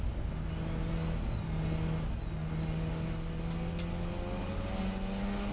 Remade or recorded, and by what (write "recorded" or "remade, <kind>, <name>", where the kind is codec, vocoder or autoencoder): recorded